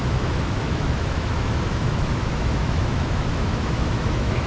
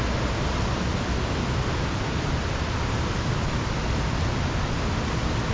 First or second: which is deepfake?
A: first